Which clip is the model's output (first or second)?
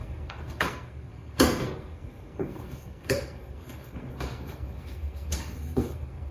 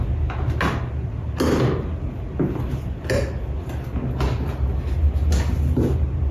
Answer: first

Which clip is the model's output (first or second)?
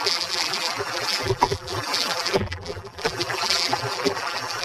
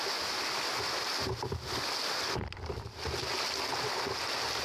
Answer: first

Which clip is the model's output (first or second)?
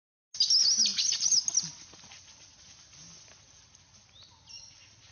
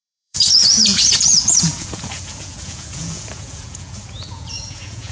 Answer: second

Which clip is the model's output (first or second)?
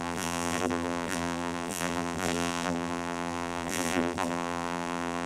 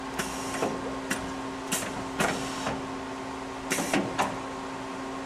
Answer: first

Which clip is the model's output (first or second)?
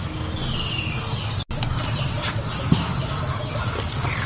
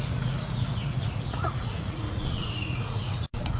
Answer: second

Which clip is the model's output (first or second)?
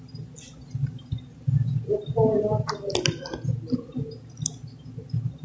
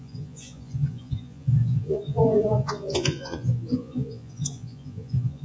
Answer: second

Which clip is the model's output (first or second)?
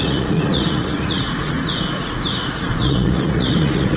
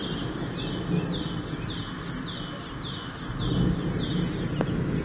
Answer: first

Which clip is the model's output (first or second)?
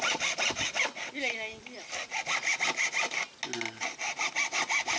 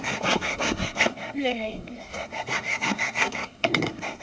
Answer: second